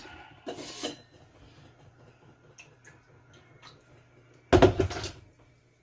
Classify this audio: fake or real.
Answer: real